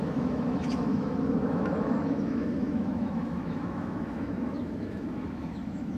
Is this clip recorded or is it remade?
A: remade